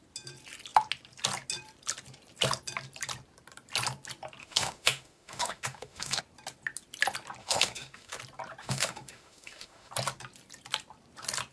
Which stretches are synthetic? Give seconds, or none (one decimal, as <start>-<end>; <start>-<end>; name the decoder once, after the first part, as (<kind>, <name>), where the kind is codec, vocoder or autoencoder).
4.4-6.2 (autoencoder, DAC-VAE); 7.4-8.2; 8.6-9.9